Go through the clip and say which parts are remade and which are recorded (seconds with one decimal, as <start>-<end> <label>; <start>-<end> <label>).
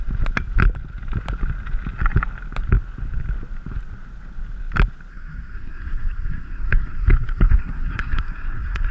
0.0-5.1 recorded; 5.1-8.9 remade